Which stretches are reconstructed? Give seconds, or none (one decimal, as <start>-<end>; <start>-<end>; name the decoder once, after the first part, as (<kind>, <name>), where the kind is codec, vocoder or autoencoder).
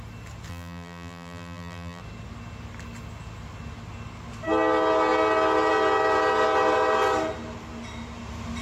0.5-2.0 (vocoder, BigVGAN v2)